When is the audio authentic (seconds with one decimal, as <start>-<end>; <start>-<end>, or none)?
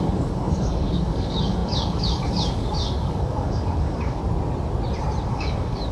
4.2-5.3